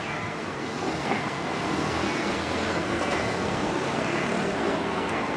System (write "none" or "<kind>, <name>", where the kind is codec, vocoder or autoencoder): codec, SNAC